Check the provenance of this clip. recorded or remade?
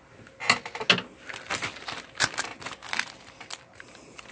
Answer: recorded